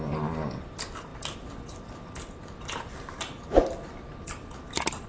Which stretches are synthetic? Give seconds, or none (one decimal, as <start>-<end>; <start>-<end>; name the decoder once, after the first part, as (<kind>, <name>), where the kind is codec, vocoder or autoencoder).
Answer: none